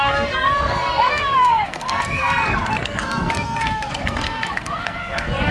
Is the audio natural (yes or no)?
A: no